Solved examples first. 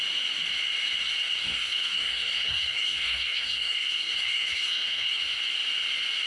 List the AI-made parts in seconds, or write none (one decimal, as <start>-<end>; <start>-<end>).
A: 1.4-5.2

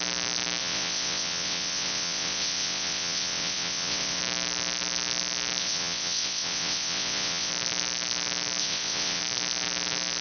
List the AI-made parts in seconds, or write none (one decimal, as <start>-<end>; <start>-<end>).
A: 0.6-4.2; 5.6-7.5; 8.6-9.2

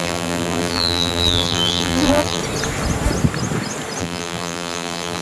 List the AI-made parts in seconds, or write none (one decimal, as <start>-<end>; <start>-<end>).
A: 0.0-2.4; 4.0-5.2

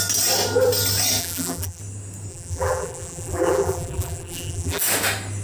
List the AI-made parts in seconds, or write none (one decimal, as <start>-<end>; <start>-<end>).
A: 1.2-1.8; 2.3-4.8

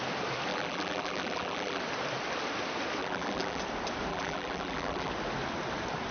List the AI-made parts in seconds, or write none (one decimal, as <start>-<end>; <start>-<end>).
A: 0.5-1.8; 3.0-3.6; 4.1-5.1